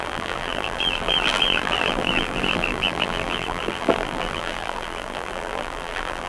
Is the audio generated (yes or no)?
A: yes